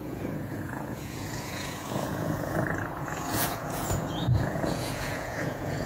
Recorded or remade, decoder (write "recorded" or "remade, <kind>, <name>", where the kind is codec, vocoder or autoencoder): remade, vocoder, Vocos